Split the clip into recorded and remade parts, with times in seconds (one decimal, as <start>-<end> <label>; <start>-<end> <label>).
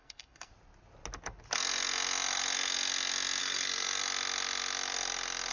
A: 0.0-0.5 remade; 0.5-3.4 recorded; 3.4-4.0 remade; 4.0-5.5 recorded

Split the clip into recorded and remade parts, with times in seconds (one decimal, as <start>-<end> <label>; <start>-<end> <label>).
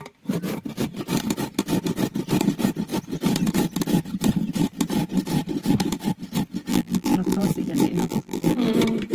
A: 0.0-6.7 recorded; 6.7-8.7 remade; 8.7-9.1 recorded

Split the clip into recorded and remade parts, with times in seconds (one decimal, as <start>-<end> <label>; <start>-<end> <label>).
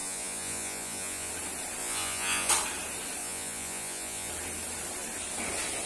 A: 0.0-1.3 remade; 1.3-1.8 recorded; 1.8-2.5 remade; 2.5-3.2 recorded; 3.2-4.3 remade; 4.3-5.9 recorded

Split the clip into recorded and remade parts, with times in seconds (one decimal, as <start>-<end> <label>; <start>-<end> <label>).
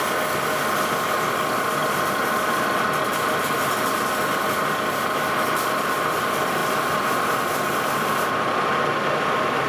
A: 0.0-9.7 recorded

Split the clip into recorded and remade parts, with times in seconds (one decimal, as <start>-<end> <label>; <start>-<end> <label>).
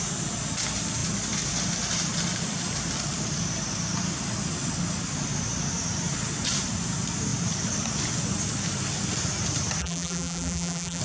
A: 0.0-9.8 recorded; 9.8-11.0 remade